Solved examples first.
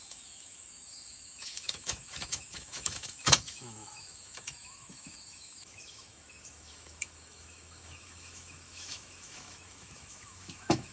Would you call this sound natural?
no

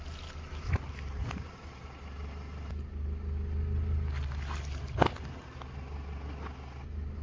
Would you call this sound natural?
yes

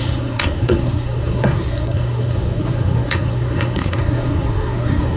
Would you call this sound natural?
no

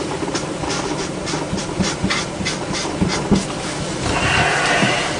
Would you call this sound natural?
yes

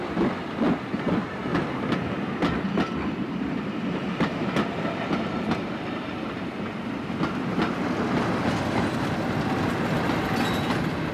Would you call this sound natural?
yes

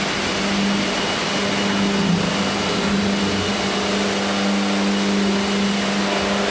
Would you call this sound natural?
yes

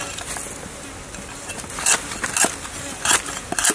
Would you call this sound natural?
yes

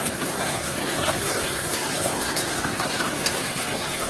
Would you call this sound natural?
no